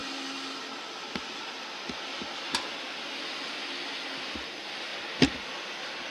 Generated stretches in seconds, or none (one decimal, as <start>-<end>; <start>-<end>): none